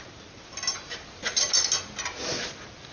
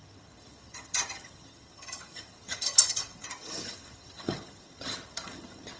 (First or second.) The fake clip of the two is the second